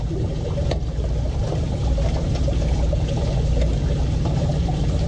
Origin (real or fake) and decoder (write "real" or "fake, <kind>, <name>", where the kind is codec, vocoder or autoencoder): fake, vocoder, BigVGAN v2